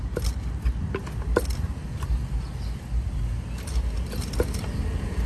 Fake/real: real